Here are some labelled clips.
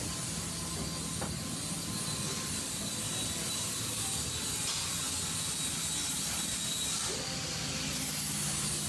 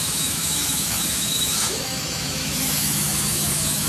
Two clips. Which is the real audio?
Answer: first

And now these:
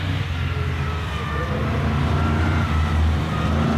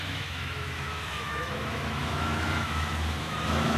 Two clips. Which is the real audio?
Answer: first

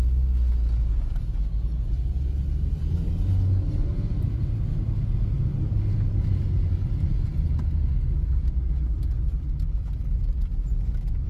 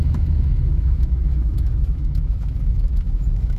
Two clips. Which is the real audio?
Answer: first